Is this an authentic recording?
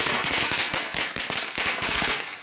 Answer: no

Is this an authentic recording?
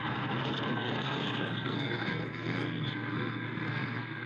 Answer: no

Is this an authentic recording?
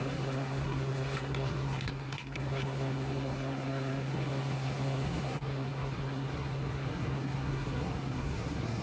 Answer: no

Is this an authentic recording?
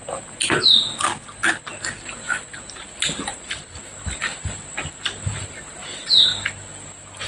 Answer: yes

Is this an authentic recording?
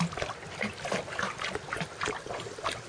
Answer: yes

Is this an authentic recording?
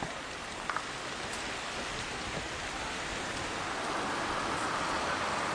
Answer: yes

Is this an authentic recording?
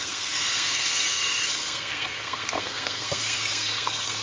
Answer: no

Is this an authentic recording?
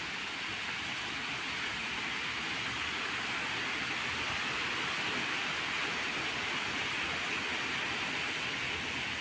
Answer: yes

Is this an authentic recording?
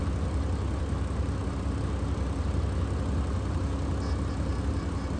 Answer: yes